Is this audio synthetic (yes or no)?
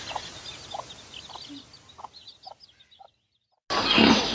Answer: no